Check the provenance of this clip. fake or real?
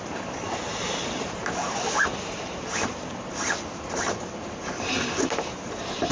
real